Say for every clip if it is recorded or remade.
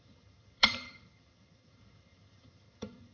remade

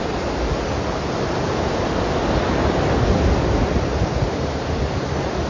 recorded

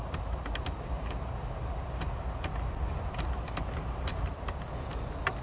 recorded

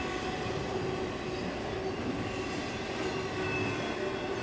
recorded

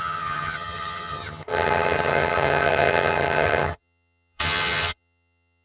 remade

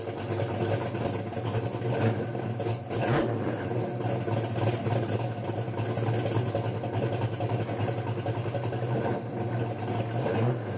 recorded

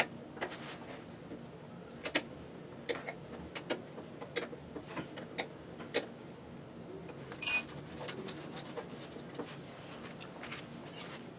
recorded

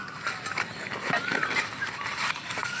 recorded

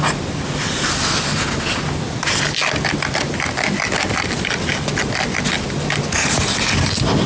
recorded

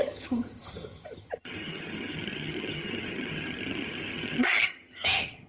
remade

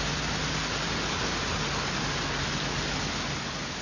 recorded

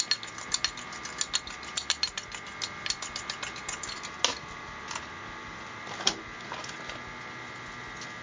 recorded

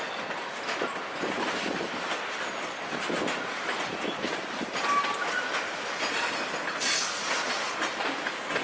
recorded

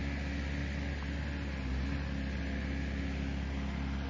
recorded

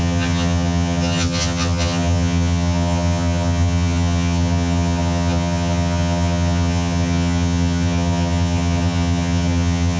remade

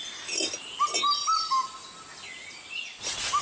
recorded